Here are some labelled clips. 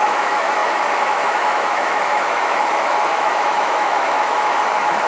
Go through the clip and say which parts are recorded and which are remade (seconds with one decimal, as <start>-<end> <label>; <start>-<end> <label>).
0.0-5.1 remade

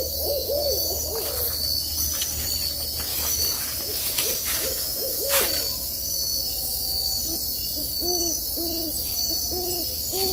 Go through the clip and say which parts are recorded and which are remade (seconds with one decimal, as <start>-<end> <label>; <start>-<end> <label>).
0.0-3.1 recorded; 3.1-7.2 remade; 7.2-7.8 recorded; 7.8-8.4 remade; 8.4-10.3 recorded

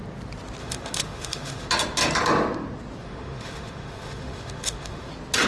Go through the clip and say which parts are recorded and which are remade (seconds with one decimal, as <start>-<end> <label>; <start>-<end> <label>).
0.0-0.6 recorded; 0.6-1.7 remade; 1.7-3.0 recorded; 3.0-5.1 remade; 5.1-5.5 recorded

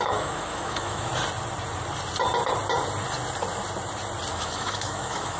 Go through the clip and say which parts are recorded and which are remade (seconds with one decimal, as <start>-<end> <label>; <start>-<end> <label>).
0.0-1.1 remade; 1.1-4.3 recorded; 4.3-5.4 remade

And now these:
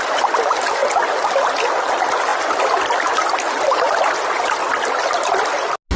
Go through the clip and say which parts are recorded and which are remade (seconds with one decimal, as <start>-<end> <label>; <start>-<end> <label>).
0.0-6.0 recorded